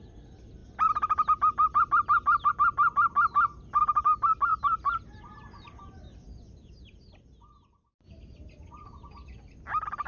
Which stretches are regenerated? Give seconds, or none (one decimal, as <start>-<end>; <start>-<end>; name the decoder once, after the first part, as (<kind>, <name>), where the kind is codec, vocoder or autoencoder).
none